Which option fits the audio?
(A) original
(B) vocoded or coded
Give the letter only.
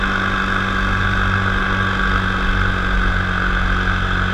A